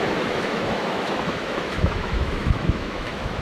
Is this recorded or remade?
remade